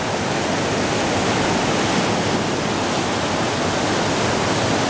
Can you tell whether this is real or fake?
real